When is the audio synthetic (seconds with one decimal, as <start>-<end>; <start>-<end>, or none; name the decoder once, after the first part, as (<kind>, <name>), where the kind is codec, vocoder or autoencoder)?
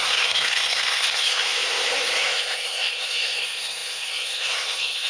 0.0-5.1 (codec, SNAC)